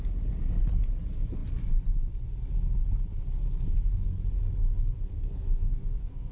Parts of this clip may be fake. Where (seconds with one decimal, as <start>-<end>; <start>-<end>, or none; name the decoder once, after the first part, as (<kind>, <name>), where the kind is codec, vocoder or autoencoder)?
5.1-6.3 (codec, SNAC)

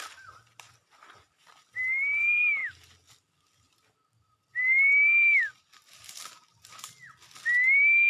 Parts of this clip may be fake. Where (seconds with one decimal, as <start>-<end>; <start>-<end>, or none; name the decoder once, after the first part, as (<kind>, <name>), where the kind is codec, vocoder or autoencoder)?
none

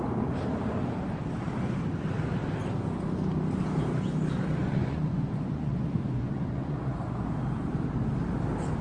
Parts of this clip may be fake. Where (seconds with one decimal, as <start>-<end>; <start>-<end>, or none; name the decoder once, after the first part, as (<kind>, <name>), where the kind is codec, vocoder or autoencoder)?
4.6-7.2 (vocoder, Vocos)